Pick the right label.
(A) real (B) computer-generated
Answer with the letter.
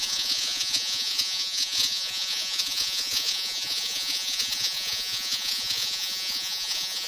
B